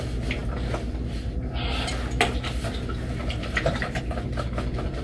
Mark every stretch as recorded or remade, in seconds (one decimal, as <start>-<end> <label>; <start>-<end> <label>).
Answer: 0.0-5.0 recorded